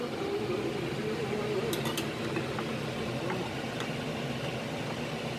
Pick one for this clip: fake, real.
real